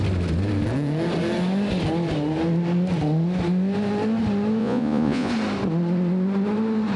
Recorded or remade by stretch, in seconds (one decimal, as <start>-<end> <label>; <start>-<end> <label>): 0.0-4.6 recorded; 4.6-5.3 remade; 5.3-7.0 recorded